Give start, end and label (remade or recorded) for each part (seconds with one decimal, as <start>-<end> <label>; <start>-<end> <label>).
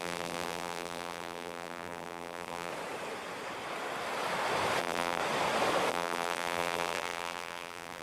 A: 0.0-2.7 remade; 2.7-4.8 recorded; 4.8-5.2 remade; 5.2-5.9 recorded; 5.9-8.0 remade